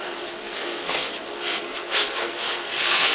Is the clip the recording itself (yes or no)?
no